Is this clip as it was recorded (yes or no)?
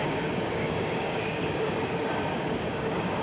no